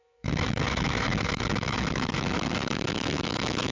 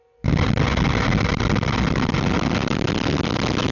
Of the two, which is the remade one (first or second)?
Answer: first